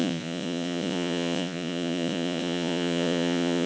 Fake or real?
fake